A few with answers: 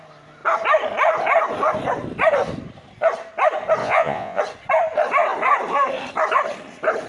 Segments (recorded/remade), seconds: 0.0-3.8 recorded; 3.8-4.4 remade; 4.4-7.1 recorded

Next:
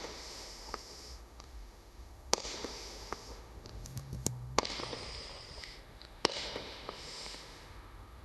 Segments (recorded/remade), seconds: 0.0-4.8 remade; 4.8-5.6 recorded; 5.6-8.2 remade

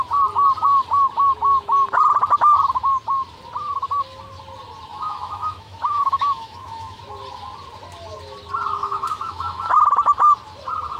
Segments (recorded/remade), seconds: 0.0-4.9 recorded; 4.9-7.0 remade; 7.0-8.8 recorded; 8.8-9.7 remade; 9.7-11.0 recorded

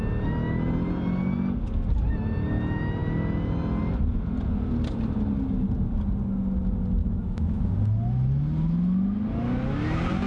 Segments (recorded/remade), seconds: 0.0-7.0 recorded; 7.0-7.6 remade; 7.6-10.3 recorded

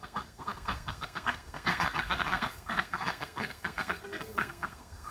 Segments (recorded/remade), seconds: 0.0-5.1 remade